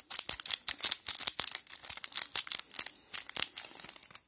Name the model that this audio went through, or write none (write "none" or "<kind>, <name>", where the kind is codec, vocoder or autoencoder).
none